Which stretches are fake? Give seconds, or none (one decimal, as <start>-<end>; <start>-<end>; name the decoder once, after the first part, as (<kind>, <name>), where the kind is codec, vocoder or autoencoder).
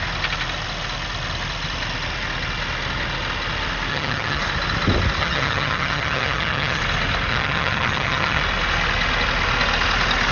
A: 3.9-4.4 (vocoder, HiFi-GAN); 5.2-6.8; 7.3-8.4